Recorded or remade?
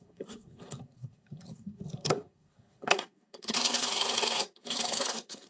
remade